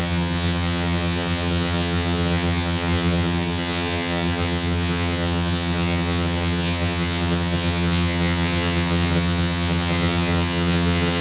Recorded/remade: remade